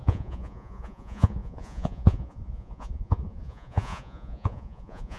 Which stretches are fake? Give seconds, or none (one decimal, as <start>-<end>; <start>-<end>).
0.0-5.2